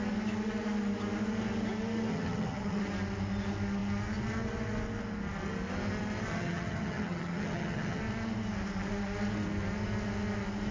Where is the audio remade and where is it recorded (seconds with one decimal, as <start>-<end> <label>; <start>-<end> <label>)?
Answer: 0.0-2.1 recorded; 2.1-2.8 remade; 2.8-6.3 recorded; 6.3-8.0 remade; 8.0-10.7 recorded